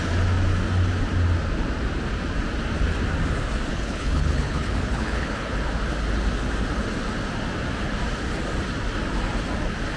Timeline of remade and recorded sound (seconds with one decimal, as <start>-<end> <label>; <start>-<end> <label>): 0.0-3.7 recorded; 3.7-5.5 remade; 5.5-10.0 recorded